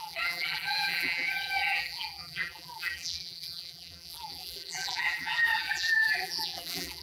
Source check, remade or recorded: remade